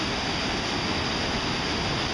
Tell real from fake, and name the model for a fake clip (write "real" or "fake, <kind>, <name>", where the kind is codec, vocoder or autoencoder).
real